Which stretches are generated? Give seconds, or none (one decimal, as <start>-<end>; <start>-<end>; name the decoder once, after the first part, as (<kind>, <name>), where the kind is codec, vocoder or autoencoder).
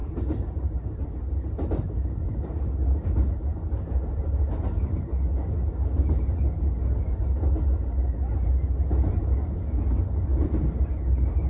10.3-10.9 (vocoder, BigVGAN v2)